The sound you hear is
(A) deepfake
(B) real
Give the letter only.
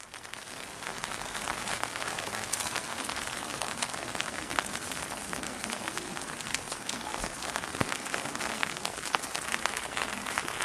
A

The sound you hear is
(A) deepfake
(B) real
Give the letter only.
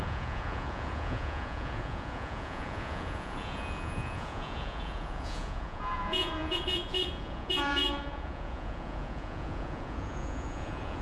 A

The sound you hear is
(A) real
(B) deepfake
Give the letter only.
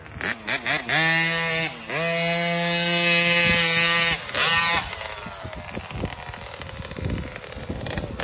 A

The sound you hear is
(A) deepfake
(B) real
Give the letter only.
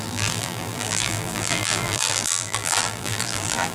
A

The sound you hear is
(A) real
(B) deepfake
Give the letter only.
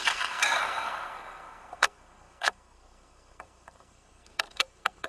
B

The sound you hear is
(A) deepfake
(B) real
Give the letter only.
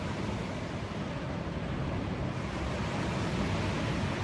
B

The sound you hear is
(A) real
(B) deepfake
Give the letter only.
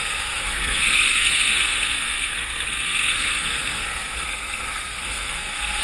B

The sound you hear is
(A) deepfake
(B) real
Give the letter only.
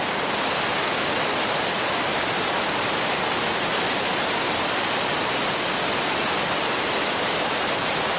B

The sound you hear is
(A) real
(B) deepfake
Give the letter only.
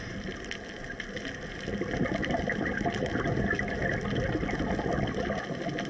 A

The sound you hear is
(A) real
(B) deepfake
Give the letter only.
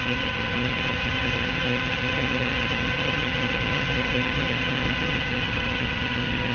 B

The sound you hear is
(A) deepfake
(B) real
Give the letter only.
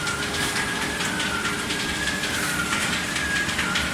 B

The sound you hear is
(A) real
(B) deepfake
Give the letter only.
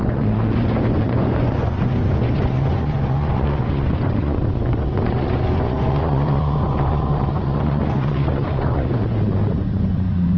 B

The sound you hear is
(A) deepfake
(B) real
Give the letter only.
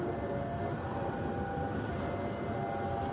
B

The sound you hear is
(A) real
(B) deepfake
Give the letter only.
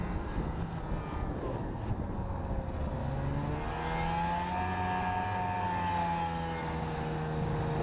A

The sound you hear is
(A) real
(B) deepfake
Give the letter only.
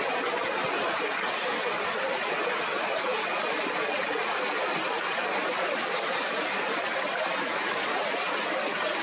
A